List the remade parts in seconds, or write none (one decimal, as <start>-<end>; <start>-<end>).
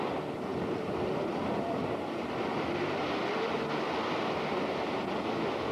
0.5-2.3